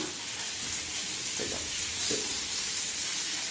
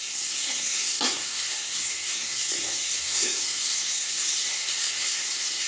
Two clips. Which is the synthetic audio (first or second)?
second